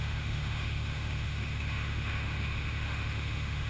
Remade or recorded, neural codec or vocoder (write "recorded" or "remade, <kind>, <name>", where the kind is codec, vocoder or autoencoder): remade, autoencoder, DAC-VAE